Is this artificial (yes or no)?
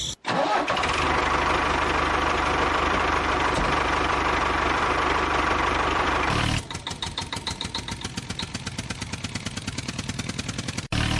yes